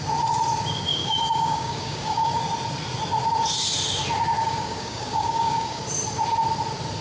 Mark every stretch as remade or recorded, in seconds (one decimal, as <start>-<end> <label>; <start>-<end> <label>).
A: 0.0-0.9 recorded; 0.9-2.4 remade; 2.4-4.4 recorded; 4.4-5.8 remade; 5.8-7.0 recorded